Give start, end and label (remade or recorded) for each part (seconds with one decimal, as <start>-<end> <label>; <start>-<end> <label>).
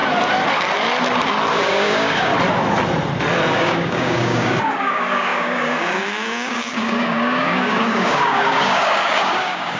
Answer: 0.0-1.5 recorded; 1.5-2.3 remade; 2.3-3.5 recorded; 3.5-9.8 remade